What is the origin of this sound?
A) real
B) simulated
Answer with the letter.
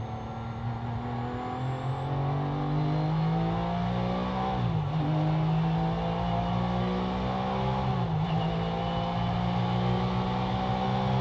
A